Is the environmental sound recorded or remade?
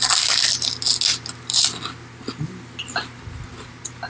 recorded